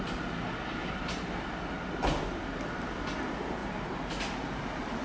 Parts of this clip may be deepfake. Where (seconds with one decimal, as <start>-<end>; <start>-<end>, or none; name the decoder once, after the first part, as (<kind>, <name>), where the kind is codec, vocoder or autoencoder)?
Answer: 0.8-1.5 (vocoder, BigVGAN v2); 3.6-5.0